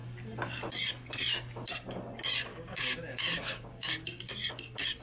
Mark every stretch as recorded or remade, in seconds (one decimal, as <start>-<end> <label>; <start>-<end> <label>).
0.0-2.5 recorded; 2.5-3.9 remade; 3.9-5.0 recorded